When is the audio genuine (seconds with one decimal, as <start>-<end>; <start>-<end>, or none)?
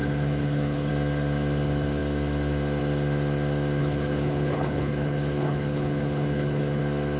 0.9-3.8; 6.8-7.2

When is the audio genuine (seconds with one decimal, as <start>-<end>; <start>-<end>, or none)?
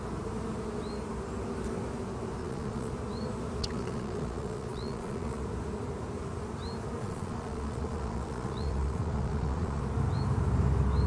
0.0-2.4; 2.9-3.6; 5.4-7.0; 9.8-11.1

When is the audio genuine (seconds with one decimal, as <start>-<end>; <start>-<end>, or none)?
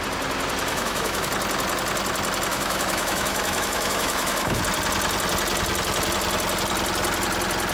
0.0-0.7; 1.3-2.5; 4.6-7.7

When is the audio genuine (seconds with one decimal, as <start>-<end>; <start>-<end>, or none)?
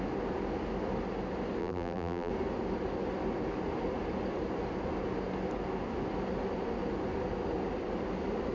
0.0-1.6; 2.3-8.5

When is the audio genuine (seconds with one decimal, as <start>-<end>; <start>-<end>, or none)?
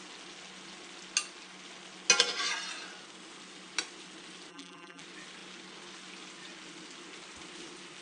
0.0-4.5; 5.0-8.0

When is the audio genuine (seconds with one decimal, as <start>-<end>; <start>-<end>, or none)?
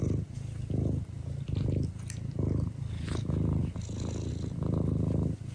0.0-5.5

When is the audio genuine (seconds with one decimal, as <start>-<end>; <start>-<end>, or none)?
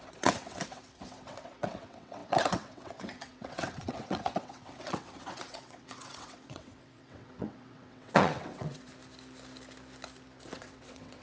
8.9-10.5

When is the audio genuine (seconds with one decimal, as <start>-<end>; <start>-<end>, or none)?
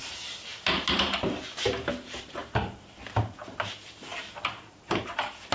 none